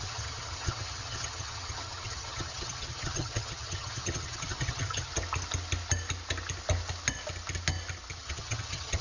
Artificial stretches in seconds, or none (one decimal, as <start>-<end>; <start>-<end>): 0.0-5.1; 8.2-9.0